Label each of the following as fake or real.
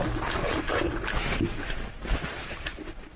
real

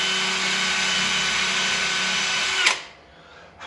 real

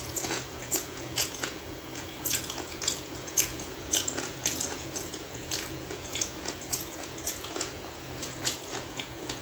fake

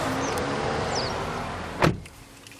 real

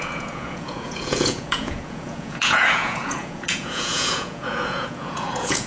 fake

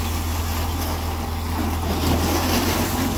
real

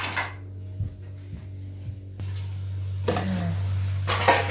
real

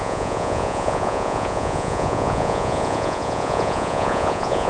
fake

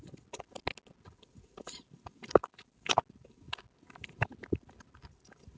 real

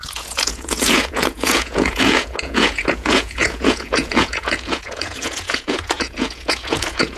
fake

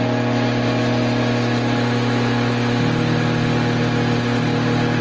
real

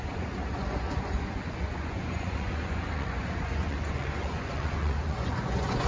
fake